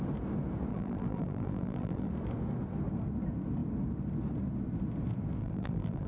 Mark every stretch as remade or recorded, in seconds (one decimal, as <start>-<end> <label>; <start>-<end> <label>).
0.0-0.7 recorded; 0.7-2.1 remade; 2.1-5.4 recorded; 5.4-6.1 remade